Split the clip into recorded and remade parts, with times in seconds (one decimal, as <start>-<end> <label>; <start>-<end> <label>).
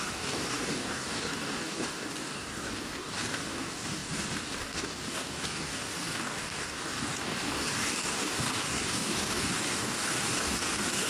0.0-11.1 remade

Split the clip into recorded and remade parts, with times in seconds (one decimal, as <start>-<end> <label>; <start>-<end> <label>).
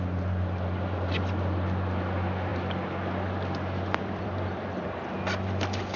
0.0-2.5 recorded; 2.5-5.0 remade; 5.0-6.0 recorded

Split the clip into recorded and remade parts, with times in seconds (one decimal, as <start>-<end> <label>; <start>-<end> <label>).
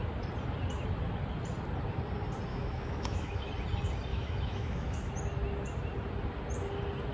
0.0-2.5 recorded; 2.5-3.5 remade; 3.5-4.1 recorded; 4.1-5.1 remade; 5.1-7.1 recorded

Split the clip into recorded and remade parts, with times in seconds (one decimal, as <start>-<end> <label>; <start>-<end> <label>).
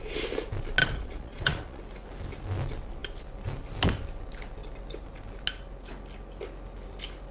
0.0-0.8 recorded; 0.8-1.8 remade; 1.8-7.3 recorded